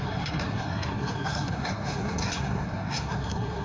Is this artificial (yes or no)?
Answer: yes